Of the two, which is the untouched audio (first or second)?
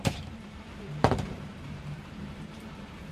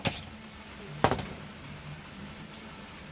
second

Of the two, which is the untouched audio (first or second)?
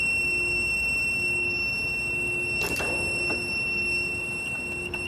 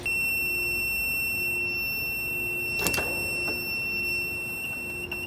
second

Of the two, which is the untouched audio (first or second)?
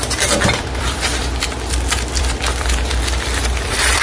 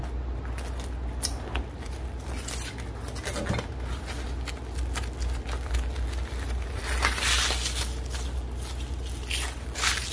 second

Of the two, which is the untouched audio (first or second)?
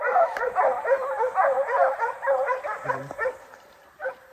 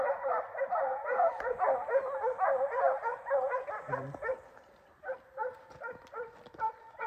second